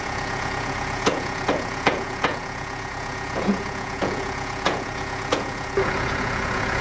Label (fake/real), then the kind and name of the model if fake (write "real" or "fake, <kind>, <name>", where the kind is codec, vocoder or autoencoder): fake, vocoder, Vocos